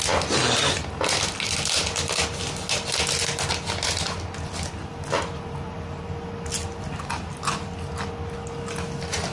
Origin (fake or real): real